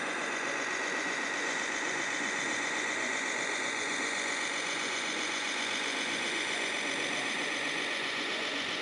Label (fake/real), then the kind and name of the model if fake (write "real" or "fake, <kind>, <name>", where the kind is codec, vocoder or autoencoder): fake, vocoder, Vocos